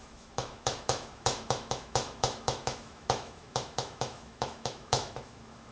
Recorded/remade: remade